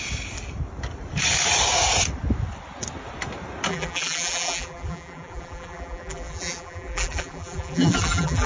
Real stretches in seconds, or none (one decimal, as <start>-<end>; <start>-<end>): 0.0-3.7